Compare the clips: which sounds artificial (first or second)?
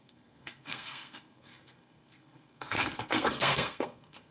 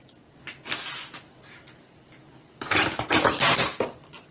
first